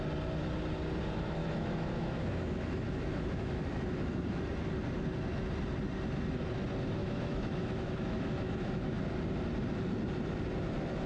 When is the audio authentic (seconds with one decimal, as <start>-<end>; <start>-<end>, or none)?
0.0-1.4; 4.7-7.0; 9.0-11.1